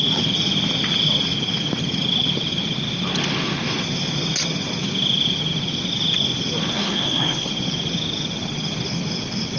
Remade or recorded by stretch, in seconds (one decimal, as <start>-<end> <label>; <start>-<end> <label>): 0.0-6.7 recorded; 6.7-7.5 remade; 7.5-9.6 recorded